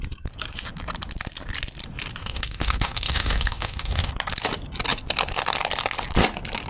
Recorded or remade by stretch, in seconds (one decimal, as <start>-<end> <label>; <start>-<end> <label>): 0.0-2.2 recorded; 2.2-4.1 remade; 4.1-6.7 recorded